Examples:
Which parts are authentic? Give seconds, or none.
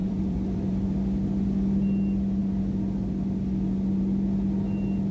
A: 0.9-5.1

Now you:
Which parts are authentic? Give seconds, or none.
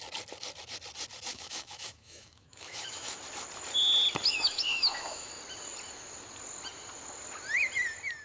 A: 0.0-1.3; 3.2-4.3; 5.3-8.2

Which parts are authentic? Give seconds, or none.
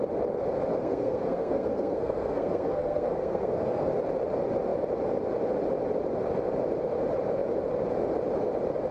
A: 0.0-0.7; 3.9-8.9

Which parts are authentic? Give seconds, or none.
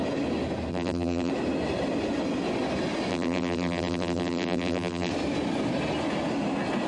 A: 0.0-0.7; 1.3-3.1; 5.1-6.9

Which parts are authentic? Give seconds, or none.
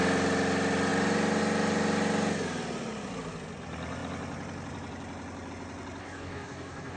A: 0.0-6.0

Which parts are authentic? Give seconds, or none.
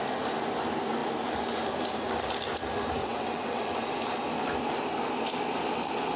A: 0.0-3.0; 3.6-6.2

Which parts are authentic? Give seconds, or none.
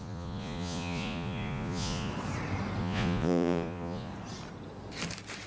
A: 2.1-2.8; 4.1-5.5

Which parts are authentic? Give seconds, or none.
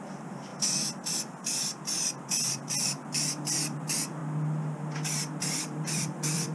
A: 0.5-1.1; 1.5-2.5; 4.2-5.4